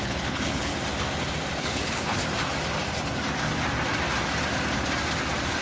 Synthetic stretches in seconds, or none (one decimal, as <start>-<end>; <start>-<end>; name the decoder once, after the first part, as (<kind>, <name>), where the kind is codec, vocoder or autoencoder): 0.0-0.7 (codec, HILCodec); 1.6-2.2